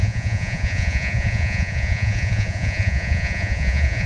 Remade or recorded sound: remade